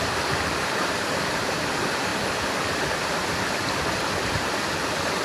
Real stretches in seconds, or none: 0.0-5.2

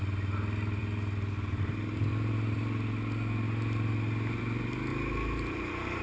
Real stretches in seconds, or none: 0.0-6.0

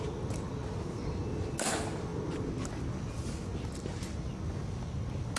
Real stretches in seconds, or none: 0.0-5.4

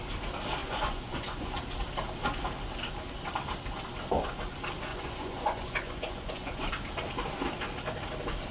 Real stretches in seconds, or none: 0.0-0.6; 1.6-4.9; 6.7-8.5